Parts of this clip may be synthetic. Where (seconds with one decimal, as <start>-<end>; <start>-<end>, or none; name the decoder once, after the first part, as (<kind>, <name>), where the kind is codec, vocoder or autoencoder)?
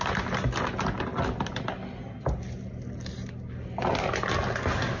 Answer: none